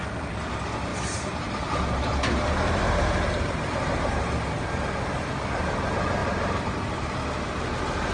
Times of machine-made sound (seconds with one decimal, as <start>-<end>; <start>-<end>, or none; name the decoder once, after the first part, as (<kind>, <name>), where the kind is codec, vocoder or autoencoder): none